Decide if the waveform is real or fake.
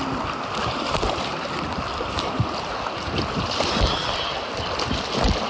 real